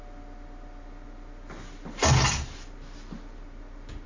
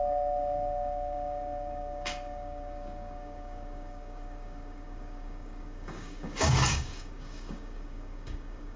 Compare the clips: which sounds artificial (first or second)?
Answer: second